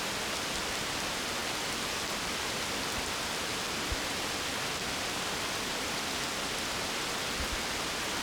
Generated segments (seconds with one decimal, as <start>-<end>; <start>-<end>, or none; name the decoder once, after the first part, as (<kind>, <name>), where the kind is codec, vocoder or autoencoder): none